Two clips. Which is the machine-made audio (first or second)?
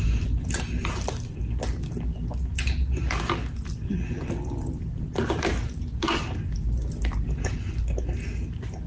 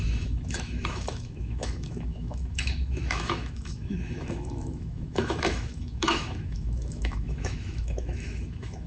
second